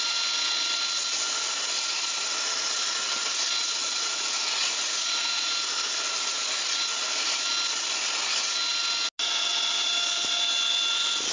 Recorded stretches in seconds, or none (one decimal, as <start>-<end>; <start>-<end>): 0.0-3.6; 5.5-11.3